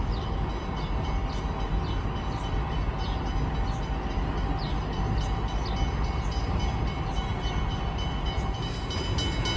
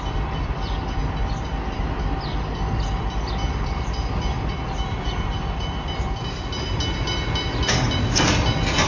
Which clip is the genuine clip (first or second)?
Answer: first